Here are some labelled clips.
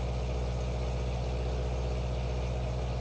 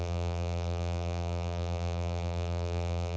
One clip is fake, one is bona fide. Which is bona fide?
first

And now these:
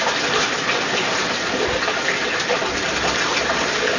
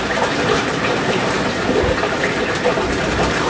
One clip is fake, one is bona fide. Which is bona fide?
first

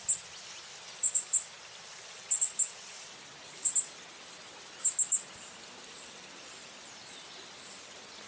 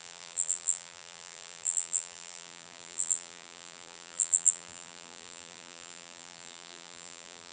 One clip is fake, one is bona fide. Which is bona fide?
first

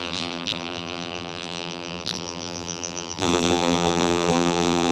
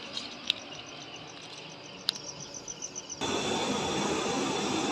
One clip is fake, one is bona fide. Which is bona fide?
second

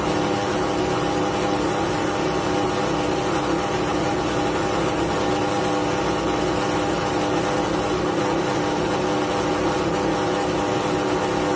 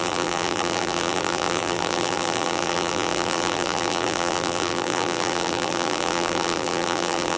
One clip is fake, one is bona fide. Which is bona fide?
first